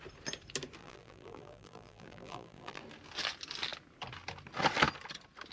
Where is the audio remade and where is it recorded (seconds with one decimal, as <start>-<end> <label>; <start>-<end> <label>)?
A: 0.0-0.8 recorded; 0.8-2.8 remade; 2.8-5.5 recorded